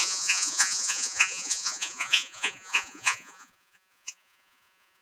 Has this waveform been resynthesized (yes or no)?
yes